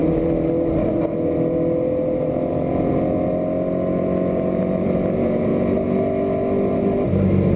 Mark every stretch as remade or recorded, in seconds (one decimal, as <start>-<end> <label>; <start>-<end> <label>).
0.0-4.6 recorded; 4.6-5.5 remade; 5.5-7.6 recorded